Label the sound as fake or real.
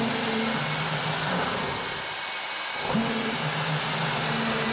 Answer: real